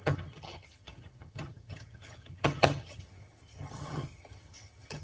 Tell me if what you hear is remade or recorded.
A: remade